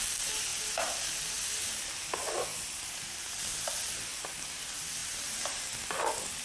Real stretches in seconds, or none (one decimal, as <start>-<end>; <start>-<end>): 0.0-2.5; 3.3-4.1; 4.6-5.0; 5.8-6.4